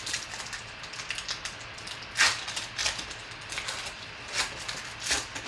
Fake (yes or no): no